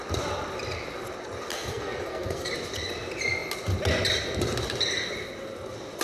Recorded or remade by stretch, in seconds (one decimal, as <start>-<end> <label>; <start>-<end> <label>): 0.0-1.5 recorded; 1.5-2.5 remade; 2.5-6.0 recorded